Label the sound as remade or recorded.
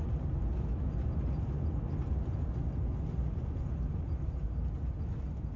recorded